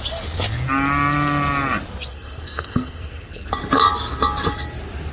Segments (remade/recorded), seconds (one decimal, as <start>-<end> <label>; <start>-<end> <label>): 0.0-2.1 recorded; 2.1-3.5 remade; 3.5-5.1 recorded